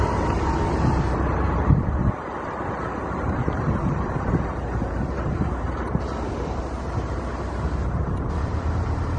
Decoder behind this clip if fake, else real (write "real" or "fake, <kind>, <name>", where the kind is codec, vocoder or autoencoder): fake, vocoder, BigVGAN v2